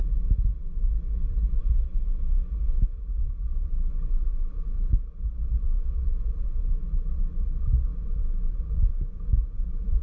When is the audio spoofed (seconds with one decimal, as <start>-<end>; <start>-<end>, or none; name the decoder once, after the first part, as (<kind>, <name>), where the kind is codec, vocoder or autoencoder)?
0.0-0.6 (vocoder, BigVGAN v2); 1.6-10.0